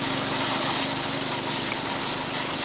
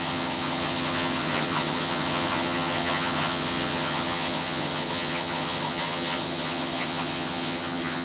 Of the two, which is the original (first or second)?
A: first